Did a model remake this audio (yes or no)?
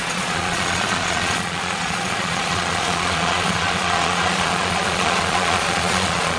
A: yes